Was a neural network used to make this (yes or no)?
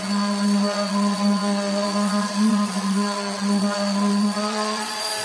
yes